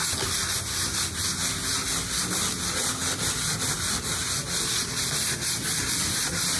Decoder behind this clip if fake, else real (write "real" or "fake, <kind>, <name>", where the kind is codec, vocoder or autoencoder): real